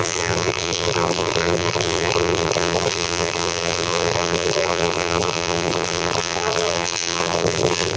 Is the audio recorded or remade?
remade